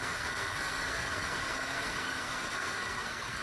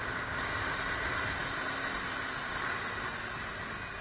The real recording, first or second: second